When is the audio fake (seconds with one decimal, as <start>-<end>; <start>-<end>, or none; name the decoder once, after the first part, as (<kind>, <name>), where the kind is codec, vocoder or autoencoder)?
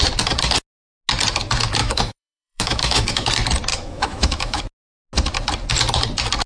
1.8-3.3 (autoencoder, DAC-VAE); 3.7-4.6